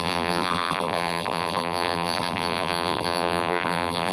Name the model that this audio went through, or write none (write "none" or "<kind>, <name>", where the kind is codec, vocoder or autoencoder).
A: vocoder, BigVGAN v2